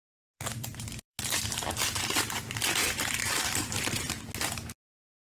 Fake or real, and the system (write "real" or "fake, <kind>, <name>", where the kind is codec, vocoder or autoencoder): fake, vocoder, BigVGAN v2